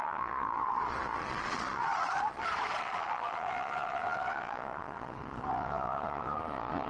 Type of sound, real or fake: fake